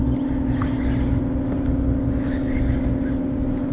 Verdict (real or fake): real